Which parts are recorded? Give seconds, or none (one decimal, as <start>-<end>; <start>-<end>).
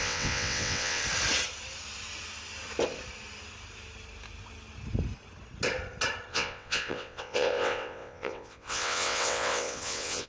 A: 1.0-6.3